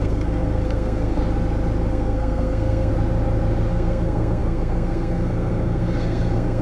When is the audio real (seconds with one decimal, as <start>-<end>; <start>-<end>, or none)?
1.2-1.9; 2.9-3.7